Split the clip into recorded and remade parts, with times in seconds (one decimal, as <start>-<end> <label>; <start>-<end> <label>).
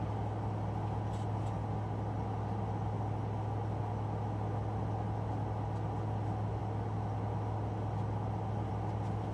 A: 0.0-9.3 recorded